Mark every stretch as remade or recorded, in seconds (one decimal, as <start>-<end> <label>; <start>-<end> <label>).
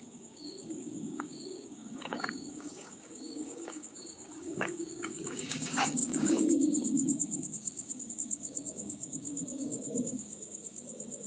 0.0-11.3 remade